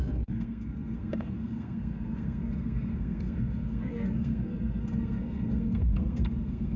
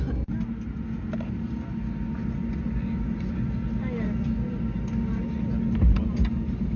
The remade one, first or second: first